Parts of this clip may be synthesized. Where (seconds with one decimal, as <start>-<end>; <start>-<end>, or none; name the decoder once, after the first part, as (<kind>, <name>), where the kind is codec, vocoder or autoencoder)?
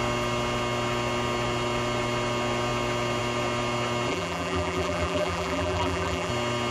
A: 4.1-6.3 (vocoder, BigVGAN v2)